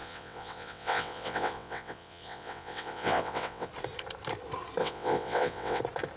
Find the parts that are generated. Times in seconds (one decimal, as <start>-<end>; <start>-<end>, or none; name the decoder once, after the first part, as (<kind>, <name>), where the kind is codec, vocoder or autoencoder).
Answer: 0.0-3.7 (vocoder, WaveNeXt); 4.8-5.8